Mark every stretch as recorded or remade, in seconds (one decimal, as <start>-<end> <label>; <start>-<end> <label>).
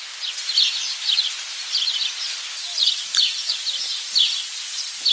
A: 0.0-5.1 recorded